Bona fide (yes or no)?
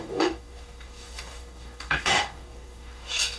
no